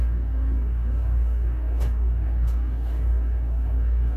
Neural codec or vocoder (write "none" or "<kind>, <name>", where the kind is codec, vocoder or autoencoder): codec, DAC